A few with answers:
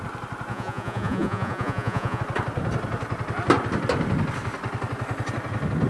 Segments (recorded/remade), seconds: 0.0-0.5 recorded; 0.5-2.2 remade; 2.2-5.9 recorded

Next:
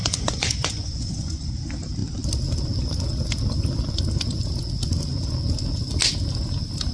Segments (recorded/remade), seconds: 0.0-1.5 remade; 1.5-6.9 recorded

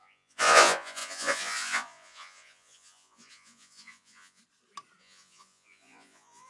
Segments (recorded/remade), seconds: 0.0-4.4 remade; 4.4-5.0 recorded; 5.0-6.5 remade

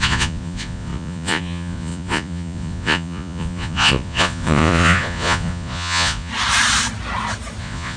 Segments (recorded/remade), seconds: 0.0-6.3 remade; 6.3-7.6 recorded; 7.6-8.0 remade